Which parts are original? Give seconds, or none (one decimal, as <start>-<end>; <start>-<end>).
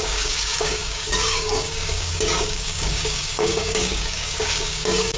none